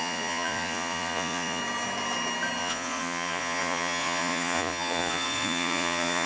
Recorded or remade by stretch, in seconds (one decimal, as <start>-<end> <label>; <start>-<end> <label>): 0.0-1.6 remade; 1.6-2.6 recorded; 2.6-6.3 remade